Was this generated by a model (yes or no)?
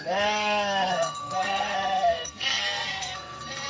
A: yes